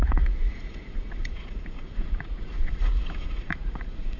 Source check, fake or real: fake